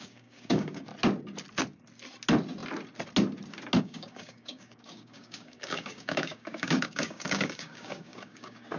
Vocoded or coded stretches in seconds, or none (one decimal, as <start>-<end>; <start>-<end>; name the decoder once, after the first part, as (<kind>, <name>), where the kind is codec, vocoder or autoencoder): 0.0-0.9 (codec, DAC); 3.8-8.8